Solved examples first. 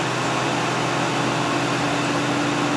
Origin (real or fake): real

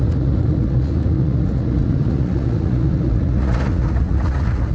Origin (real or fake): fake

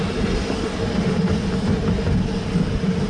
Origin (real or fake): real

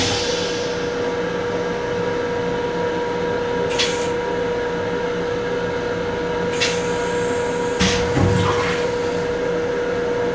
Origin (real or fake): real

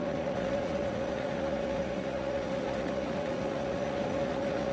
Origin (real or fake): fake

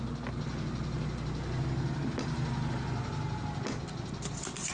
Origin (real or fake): real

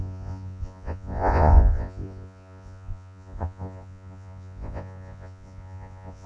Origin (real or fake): fake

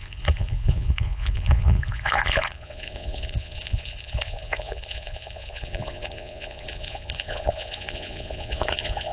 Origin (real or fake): fake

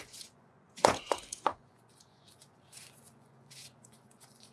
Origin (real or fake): fake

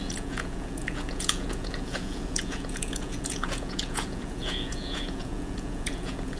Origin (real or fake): fake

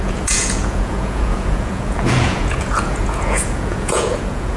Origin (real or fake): fake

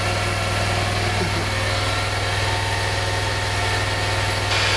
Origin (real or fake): real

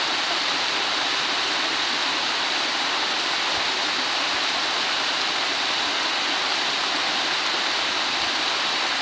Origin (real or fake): real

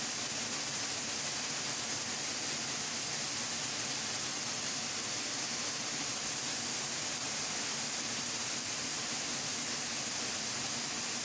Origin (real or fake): real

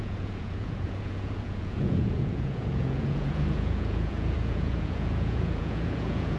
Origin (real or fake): fake